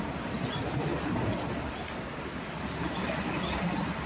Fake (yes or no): no